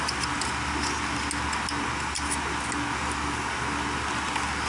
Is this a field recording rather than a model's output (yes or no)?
yes